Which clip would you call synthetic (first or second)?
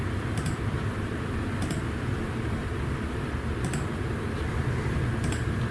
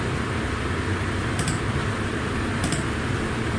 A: first